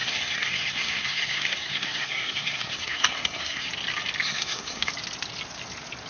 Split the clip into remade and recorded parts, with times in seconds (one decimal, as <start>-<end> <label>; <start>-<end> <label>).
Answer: 0.0-3.7 remade; 3.7-4.2 recorded; 4.2-4.9 remade; 4.9-6.1 recorded